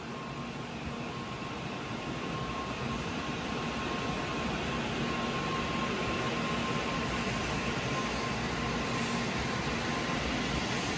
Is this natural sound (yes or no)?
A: yes